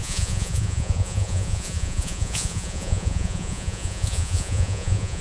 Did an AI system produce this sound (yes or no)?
yes